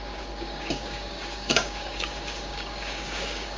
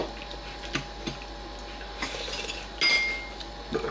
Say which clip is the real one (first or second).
second